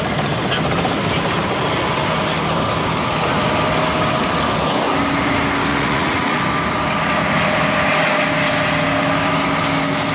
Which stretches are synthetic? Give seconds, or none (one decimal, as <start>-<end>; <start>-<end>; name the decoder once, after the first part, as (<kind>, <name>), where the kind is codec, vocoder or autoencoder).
5.7-6.4 (vocoder, Vocos)